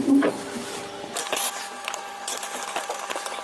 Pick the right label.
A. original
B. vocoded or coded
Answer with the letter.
A